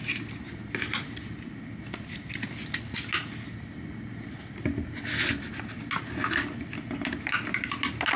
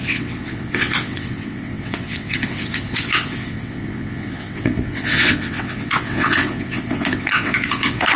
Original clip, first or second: first